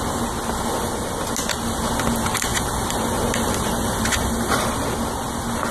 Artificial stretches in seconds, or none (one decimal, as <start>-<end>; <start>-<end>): 2.5-4.7